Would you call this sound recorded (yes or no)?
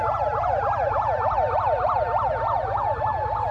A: yes